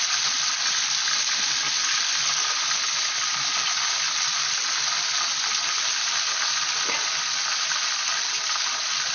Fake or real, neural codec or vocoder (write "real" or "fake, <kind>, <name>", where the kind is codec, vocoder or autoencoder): real